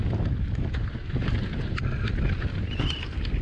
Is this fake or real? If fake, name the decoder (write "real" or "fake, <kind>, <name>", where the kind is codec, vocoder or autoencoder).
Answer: real